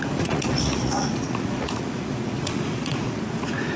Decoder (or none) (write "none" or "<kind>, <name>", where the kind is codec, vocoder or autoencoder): vocoder, Vocos